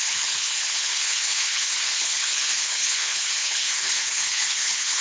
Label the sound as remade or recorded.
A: remade